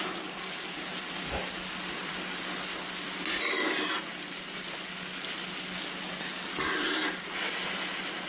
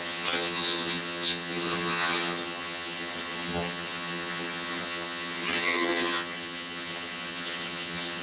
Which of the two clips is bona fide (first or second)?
first